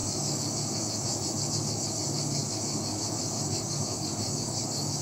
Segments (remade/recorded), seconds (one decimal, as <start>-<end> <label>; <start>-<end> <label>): 0.0-5.0 remade